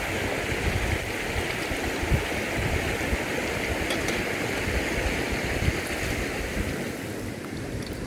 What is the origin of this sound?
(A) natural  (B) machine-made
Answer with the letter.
A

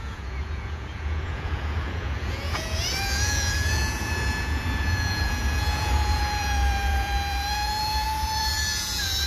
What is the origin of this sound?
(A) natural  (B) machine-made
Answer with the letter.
B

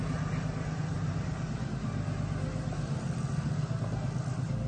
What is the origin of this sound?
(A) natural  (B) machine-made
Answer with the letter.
A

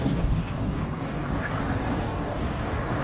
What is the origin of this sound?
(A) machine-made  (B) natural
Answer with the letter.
A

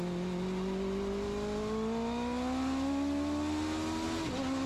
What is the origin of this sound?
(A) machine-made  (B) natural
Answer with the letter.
B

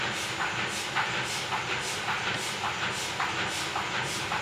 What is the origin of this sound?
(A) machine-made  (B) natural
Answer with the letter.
B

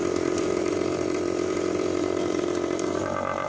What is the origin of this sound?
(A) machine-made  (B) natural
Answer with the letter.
A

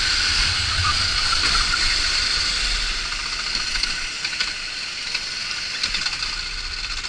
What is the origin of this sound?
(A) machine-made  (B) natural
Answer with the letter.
B